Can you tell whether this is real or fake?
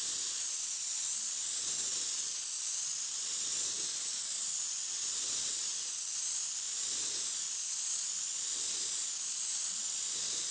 real